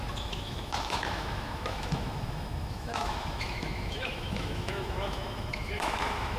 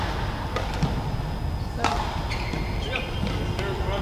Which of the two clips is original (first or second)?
second